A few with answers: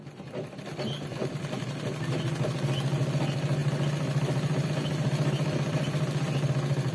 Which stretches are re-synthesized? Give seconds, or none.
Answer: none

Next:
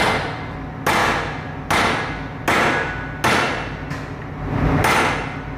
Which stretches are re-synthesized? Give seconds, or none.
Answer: none

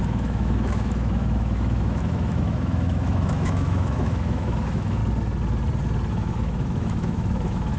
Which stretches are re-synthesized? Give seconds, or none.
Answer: 0.0-5.0 (autoencoder, DAC-VAE); 6.1-7.8